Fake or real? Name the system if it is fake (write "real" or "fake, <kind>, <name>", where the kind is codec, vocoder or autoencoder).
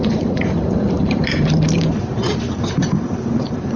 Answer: fake, vocoder, BigVGAN v2